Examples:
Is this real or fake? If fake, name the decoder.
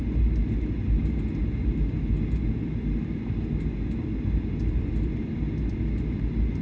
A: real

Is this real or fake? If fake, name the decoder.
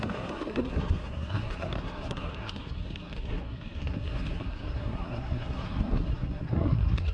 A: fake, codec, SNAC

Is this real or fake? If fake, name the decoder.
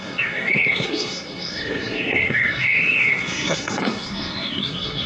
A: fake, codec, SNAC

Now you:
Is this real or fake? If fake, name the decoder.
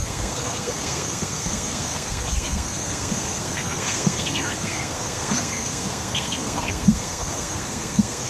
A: fake, codec, SNAC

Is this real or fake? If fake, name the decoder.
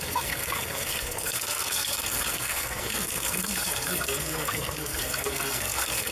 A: fake, codec, SNAC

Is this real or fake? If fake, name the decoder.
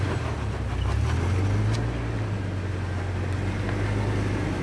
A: real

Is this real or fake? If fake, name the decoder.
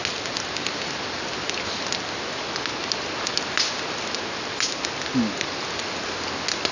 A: real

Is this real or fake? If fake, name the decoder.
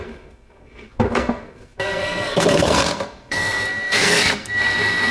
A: fake, codec, SNAC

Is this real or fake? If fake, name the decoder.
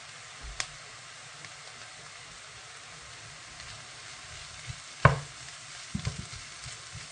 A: real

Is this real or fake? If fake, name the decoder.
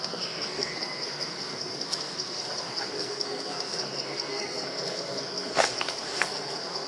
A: fake, codec, SNAC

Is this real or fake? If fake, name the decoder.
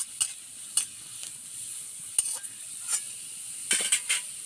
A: real